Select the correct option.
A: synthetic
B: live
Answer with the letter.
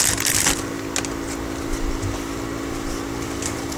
B